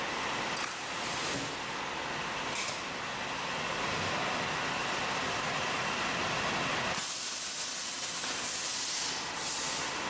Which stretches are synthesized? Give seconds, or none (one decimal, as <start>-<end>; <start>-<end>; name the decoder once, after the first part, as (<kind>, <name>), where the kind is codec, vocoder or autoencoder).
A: 4.8-6.1 (vocoder, BigVGAN v2)